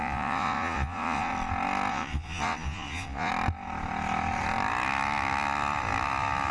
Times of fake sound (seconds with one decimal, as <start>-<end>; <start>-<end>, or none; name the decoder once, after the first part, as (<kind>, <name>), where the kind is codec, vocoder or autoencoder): 0.0-1.3 (vocoder, Vocos); 1.9-3.3